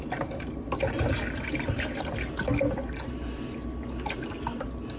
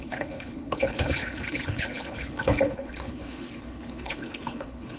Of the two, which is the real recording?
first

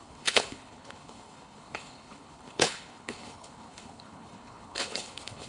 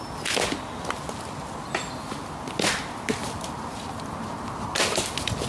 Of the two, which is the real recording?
second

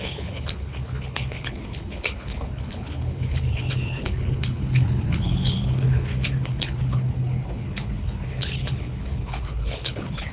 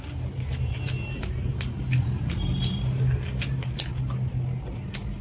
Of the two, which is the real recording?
second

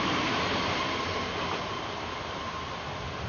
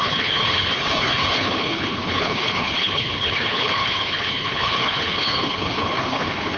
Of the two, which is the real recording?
first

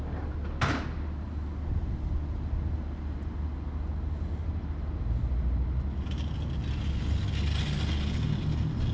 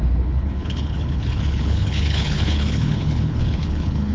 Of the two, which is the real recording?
first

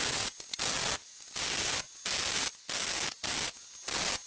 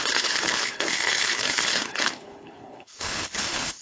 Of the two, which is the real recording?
first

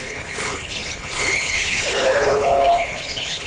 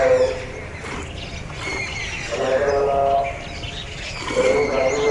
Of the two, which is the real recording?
second